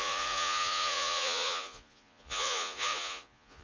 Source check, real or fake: fake